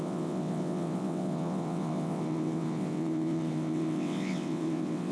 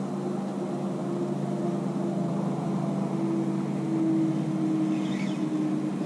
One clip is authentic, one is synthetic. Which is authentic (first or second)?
second